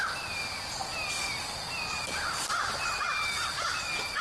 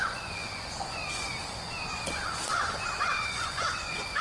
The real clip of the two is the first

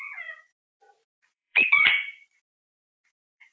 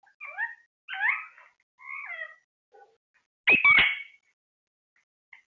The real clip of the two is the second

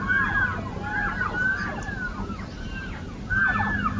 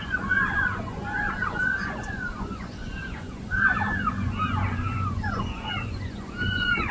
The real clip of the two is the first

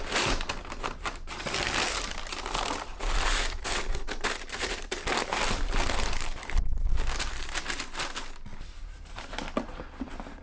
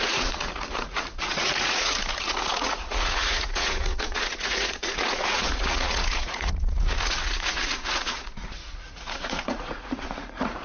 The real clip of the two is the first